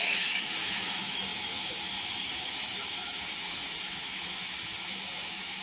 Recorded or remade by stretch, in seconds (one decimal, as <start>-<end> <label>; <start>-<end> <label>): 0.0-5.6 remade

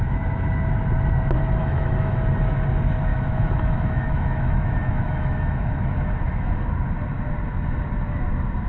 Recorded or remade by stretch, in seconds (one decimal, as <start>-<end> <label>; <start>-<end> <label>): 0.0-1.6 recorded; 1.6-2.2 remade; 2.2-3.1 recorded; 3.1-6.6 remade; 6.6-8.7 recorded

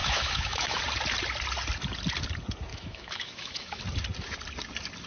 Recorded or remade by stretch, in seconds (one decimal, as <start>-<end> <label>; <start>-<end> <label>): 0.0-0.8 remade; 0.8-2.7 recorded; 2.7-3.8 remade; 3.8-5.1 recorded

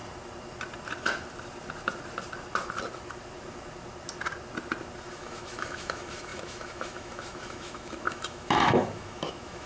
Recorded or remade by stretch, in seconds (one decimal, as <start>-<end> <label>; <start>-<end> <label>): 0.0-5.1 recorded; 5.1-9.7 remade